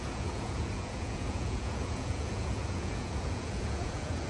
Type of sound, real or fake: fake